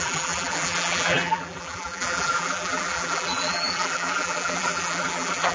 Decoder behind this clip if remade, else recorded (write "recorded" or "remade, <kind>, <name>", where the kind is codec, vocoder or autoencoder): remade, vocoder, BigVGAN v2